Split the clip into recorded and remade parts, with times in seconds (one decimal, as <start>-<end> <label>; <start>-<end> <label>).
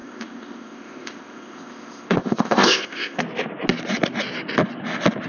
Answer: 0.0-3.2 remade; 3.2-5.3 recorded